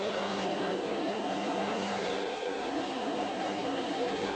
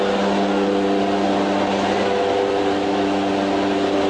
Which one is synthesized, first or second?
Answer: first